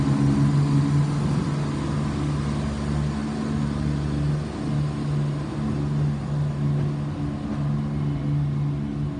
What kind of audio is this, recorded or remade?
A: recorded